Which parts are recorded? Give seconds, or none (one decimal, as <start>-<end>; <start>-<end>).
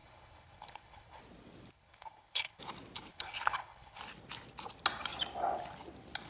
1.2-1.7; 2.6-3.1; 4.0-6.3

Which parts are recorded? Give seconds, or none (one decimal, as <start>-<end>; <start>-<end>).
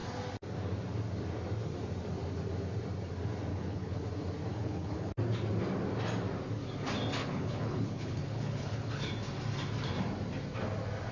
0.0-3.5; 4.0-4.5; 5.1-7.2; 9.1-11.1